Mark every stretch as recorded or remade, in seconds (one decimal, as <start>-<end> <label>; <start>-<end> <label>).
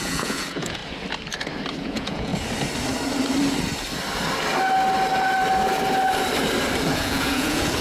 0.0-0.8 remade; 0.8-1.8 recorded; 1.8-2.3 remade; 2.3-6.8 recorded; 6.8-7.8 remade